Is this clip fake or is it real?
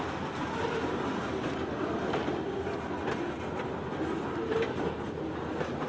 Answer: real